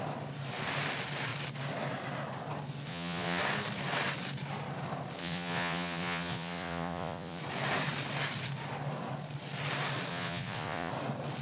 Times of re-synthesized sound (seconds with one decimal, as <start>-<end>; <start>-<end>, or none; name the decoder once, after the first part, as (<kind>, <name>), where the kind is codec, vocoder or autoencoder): 2.9-3.4 (vocoder, Vocos); 5.2-7.4; 10.1-10.9